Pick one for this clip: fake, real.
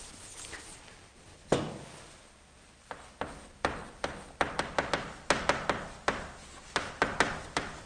real